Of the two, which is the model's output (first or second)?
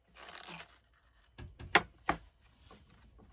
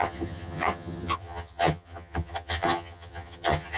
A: second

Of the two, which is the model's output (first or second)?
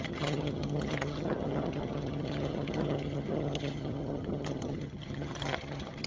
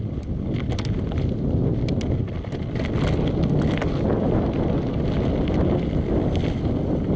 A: first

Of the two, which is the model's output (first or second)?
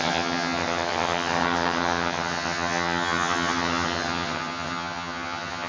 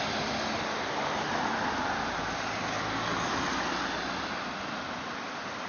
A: first